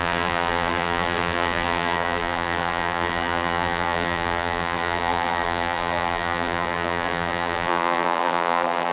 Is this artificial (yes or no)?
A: yes